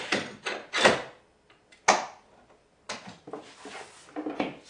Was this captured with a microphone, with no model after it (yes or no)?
yes